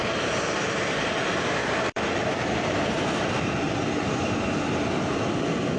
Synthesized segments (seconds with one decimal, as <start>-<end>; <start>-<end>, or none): 1.6-5.1